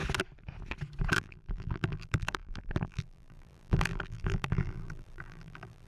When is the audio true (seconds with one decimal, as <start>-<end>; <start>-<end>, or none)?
0.0-1.1